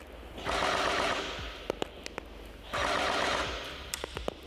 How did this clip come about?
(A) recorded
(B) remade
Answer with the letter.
A